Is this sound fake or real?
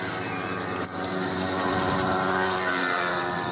real